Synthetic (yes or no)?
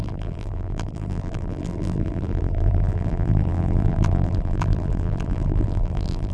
yes